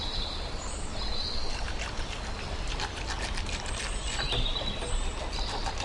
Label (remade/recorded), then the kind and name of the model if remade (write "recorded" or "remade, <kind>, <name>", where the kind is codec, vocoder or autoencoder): recorded